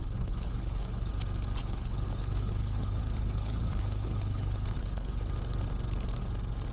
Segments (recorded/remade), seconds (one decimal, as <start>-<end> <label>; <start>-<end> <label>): 0.0-1.1 remade; 1.1-1.6 recorded; 1.6-5.3 remade; 5.3-6.7 recorded